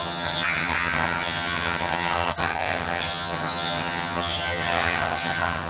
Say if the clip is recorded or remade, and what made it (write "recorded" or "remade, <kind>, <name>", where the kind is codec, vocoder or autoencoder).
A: remade, vocoder, HiFi-GAN